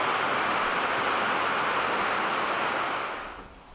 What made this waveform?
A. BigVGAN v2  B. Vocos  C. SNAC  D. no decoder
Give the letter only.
D